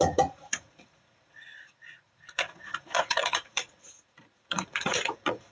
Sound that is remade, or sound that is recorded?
remade